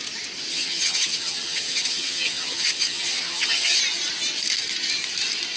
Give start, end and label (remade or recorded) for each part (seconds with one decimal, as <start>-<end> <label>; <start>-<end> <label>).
0.0-0.5 recorded; 0.5-3.8 remade; 3.8-5.6 recorded